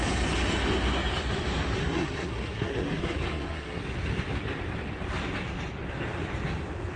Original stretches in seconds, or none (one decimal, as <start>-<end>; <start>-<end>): 0.0-1.8; 3.8-7.0